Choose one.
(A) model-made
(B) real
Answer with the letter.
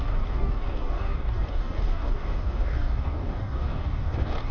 A